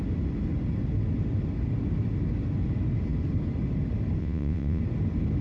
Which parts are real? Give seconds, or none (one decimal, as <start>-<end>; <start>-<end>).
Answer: 0.0-4.2; 4.8-5.4